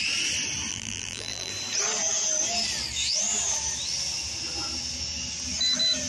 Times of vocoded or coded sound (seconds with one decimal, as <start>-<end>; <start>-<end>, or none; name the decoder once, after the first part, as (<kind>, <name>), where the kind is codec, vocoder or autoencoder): 0.7-1.5 (vocoder, BigVGAN v2)